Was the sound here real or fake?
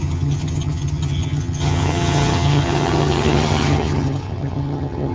fake